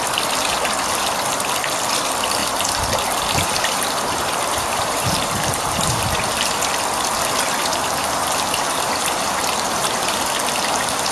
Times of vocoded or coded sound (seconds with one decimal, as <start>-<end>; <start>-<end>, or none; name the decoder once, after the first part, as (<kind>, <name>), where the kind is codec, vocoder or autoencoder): 2.4-6.3 (vocoder, BigVGAN v2); 7.7-10.2